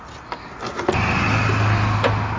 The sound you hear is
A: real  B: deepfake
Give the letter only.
A